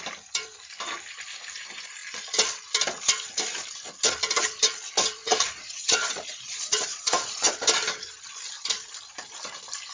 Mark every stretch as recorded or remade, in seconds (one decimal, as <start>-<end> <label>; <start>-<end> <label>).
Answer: 0.0-5.2 recorded; 5.2-7.5 remade; 7.5-9.9 recorded